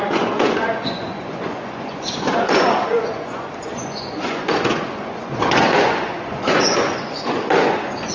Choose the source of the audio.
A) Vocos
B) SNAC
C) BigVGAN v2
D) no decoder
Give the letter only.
A